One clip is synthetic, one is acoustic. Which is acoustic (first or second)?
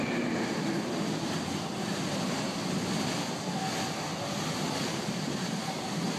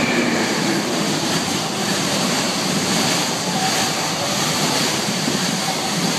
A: first